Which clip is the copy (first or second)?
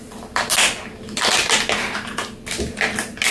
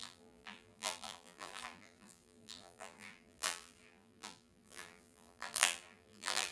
second